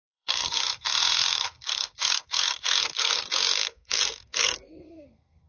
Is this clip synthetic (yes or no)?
yes